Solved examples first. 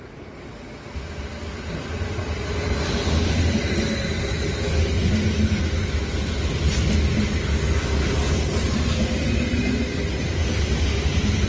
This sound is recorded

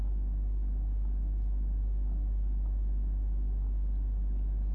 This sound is recorded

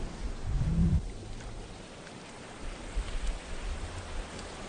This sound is recorded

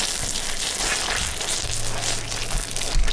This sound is recorded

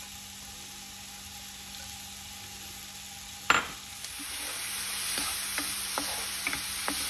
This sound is recorded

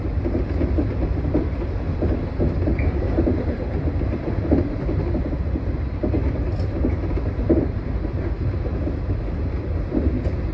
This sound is recorded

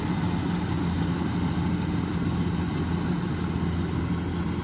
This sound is recorded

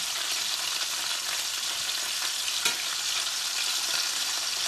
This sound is recorded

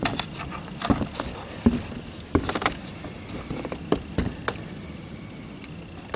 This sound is recorded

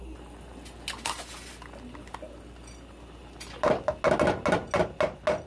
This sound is recorded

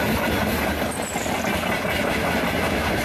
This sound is recorded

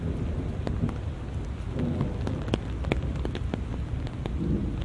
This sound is recorded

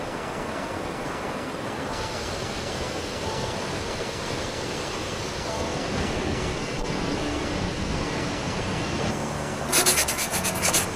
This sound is remade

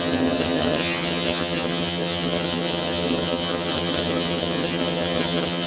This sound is remade